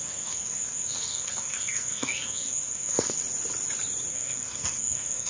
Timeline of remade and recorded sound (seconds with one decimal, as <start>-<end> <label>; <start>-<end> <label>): 0.0-3.2 remade; 3.2-4.1 recorded; 4.1-5.3 remade